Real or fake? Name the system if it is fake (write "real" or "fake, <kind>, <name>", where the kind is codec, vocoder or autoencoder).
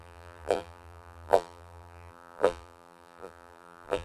fake, vocoder, BigVGAN v2